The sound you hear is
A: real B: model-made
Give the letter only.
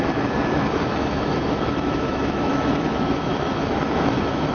B